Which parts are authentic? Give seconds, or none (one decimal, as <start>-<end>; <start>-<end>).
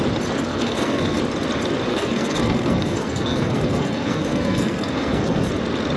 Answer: 0.0-0.5; 1.2-1.9; 5.5-6.0